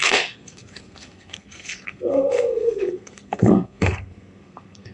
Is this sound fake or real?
fake